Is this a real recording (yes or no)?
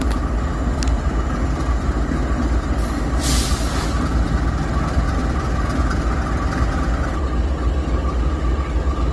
yes